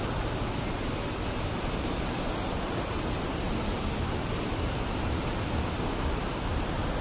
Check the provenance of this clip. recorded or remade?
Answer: recorded